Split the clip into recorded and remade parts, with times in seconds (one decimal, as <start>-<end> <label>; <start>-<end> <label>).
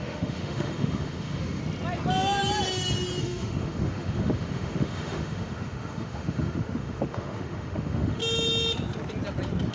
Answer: 0.0-1.6 remade; 1.6-3.2 recorded; 3.2-8.2 remade; 8.2-9.7 recorded